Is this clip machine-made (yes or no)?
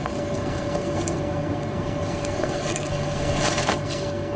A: yes